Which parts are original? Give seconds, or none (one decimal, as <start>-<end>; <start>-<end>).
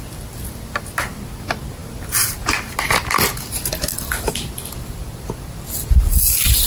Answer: 0.0-3.9; 5.2-6.7